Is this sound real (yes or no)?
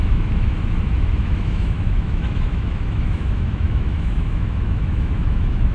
no